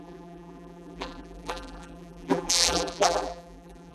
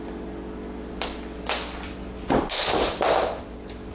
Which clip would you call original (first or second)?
second